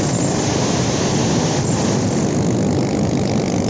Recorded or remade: recorded